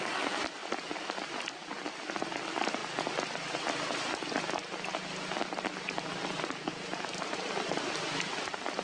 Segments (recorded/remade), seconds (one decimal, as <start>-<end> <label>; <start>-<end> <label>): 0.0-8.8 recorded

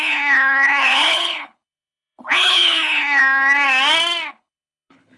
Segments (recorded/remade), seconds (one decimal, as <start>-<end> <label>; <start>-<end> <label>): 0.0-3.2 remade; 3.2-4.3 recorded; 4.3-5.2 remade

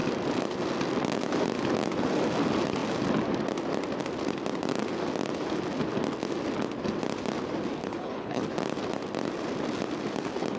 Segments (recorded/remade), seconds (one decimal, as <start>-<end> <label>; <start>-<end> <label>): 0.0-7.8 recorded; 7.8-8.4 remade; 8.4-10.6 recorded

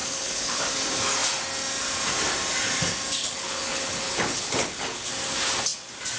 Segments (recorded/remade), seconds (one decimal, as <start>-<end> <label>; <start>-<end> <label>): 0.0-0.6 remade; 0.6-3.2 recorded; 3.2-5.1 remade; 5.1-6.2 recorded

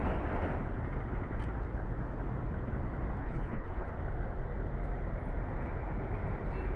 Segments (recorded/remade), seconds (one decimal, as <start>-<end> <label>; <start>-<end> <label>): 0.0-3.2 recorded; 3.2-3.9 remade; 3.9-6.8 recorded

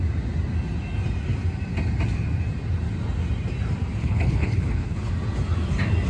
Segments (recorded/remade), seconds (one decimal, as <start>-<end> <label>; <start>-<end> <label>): 0.0-4.0 recorded; 4.0-5.1 remade; 5.1-6.1 recorded

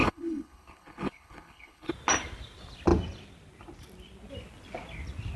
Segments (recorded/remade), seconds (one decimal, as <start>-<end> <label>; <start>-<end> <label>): 0.0-1.9 remade; 1.9-5.4 recorded

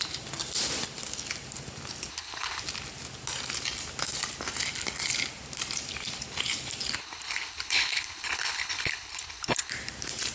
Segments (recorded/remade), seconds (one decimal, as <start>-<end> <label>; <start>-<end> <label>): 0.0-2.1 recorded; 2.1-2.6 remade; 2.6-7.0 recorded; 7.0-9.7 remade; 9.7-10.3 recorded